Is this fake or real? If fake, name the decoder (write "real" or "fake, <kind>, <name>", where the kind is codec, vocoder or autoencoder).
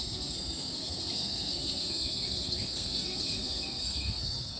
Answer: fake, codec, SNAC